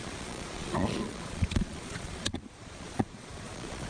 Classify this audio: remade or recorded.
remade